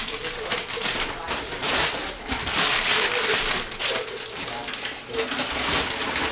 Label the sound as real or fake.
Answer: real